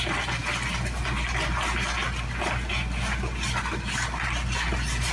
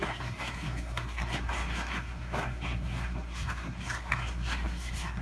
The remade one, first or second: second